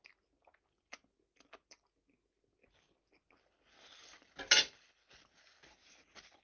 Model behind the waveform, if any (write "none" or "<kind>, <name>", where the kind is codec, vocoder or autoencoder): none